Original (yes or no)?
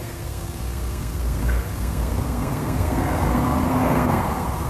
no